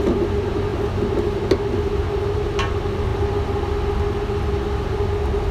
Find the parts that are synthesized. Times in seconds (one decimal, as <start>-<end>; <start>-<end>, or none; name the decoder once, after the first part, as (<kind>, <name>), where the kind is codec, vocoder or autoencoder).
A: none